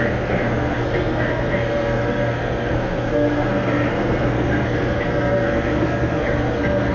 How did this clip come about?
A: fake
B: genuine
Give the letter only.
A